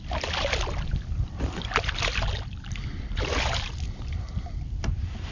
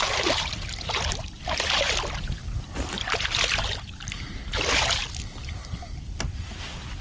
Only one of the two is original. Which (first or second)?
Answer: second